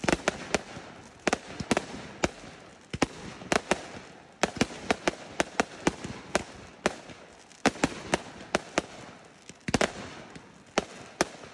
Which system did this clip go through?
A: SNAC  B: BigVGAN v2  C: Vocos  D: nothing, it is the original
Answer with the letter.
D